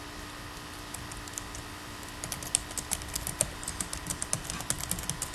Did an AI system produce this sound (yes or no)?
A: no